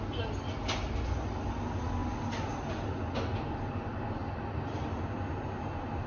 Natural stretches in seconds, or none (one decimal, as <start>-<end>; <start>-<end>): 0.0-2.0; 3.1-6.1